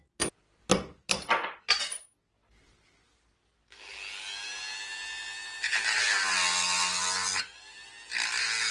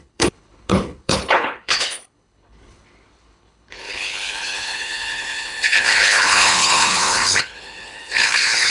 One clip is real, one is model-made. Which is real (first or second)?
first